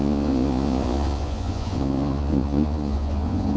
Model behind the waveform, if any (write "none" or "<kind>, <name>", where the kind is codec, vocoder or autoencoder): vocoder, Vocos